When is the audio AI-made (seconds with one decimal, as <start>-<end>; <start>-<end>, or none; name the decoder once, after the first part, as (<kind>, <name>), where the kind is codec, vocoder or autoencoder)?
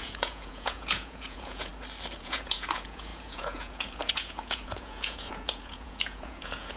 0.0-1.7 (vocoder, Vocos); 2.2-6.8